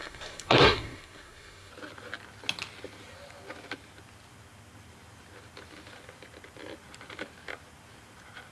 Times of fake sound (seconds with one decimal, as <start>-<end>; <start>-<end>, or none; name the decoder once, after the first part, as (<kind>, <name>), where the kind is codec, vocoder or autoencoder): 0.0-1.7 (codec, SNAC)